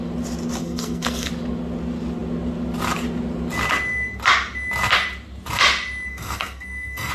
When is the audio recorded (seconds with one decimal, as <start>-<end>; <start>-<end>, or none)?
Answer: 0.0-0.6; 1.3-6.1